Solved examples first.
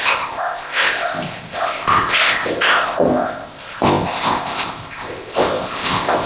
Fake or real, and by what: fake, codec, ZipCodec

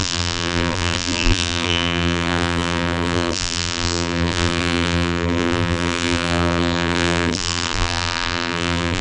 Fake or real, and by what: fake, vocoder, BigVGAN v2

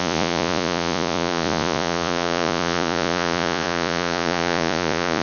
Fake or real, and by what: fake, vocoder, Vocos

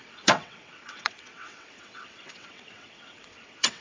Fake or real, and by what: fake, vocoder, WaveNeXt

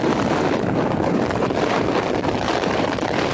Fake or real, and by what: fake, vocoder, BigVGAN v2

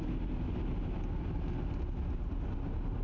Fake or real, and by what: real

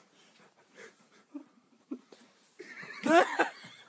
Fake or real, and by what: fake, vocoder, Vocos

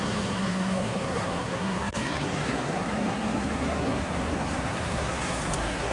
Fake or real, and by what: fake, codec, SNAC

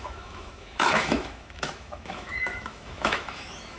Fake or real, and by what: fake, autoencoder, DAC-VAE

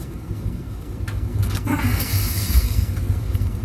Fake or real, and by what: fake, codec, SNAC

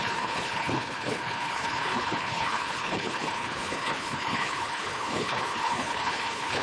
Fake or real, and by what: fake, codec, HILCodec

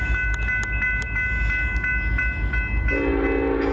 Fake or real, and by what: real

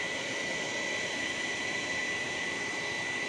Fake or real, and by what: real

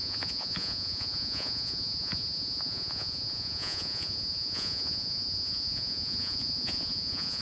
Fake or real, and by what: fake, vocoder, Vocos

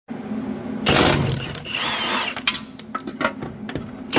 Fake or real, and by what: real